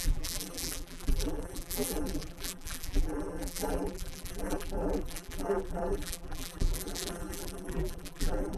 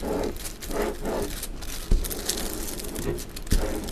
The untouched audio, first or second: second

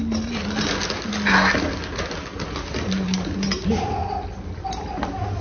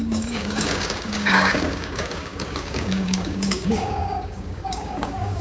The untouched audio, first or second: first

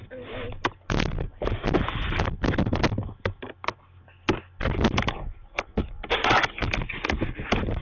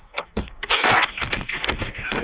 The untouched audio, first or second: first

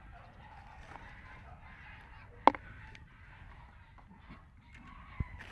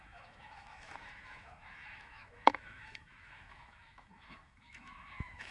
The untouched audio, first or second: first